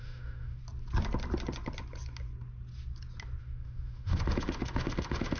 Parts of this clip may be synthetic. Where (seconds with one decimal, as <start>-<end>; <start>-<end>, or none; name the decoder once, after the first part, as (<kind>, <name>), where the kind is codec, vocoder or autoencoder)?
0.0-0.6 (autoencoder, DAC-VAE); 3.4-5.4

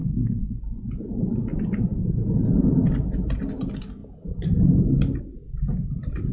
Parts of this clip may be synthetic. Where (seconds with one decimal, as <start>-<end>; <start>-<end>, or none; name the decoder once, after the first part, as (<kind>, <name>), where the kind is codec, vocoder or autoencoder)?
0.0-0.6 (codec, SNAC)

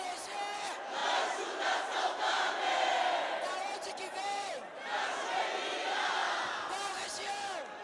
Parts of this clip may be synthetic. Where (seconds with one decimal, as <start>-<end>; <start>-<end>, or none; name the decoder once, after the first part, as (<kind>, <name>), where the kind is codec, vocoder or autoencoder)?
1.0-5.4 (vocoder, BigVGAN v2)

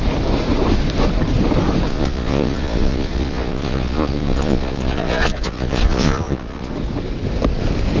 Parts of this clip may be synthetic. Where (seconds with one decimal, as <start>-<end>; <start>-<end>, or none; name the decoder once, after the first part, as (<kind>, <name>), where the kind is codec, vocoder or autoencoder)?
1.9-6.7 (vocoder, Vocos)

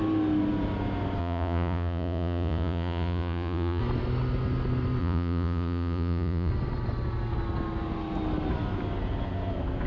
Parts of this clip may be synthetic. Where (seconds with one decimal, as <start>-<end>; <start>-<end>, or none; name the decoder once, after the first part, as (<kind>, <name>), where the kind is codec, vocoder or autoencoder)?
1.2-3.8 (vocoder, Vocos); 5.0-6.5